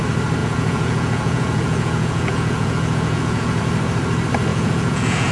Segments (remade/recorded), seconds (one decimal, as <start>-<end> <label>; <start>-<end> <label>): 0.0-0.4 recorded; 0.4-3.6 remade; 3.6-4.5 recorded; 4.5-5.3 remade